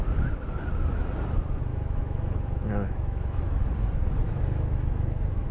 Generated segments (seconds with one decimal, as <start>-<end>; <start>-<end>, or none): 1.7-3.6; 4.2-5.5